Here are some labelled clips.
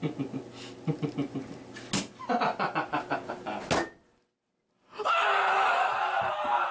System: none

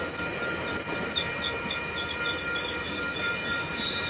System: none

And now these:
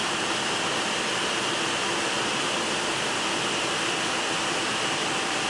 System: none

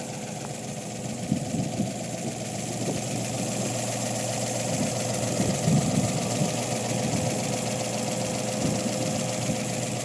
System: none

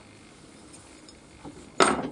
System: none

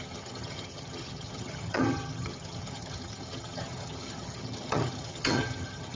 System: vocoder, HiFi-GAN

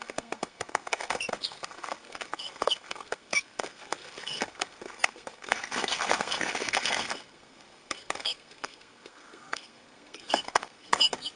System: codec, SNAC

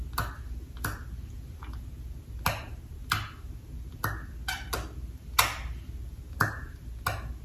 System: none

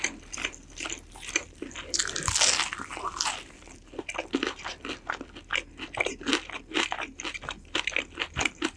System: none